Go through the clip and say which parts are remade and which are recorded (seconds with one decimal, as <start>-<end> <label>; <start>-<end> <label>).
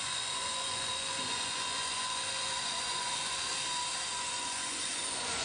0.0-3.5 remade; 3.5-4.1 recorded; 4.1-5.4 remade